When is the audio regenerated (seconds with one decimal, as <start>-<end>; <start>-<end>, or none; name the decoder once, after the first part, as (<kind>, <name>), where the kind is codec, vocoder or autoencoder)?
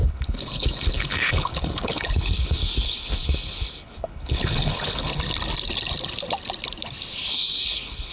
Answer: 0.0-5.1 (codec, HILCodec); 7.3-8.1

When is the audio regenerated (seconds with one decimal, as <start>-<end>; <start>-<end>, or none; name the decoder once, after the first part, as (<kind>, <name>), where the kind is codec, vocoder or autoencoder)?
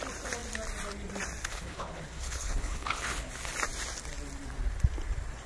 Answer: 1.4-3.3 (codec, HILCodec)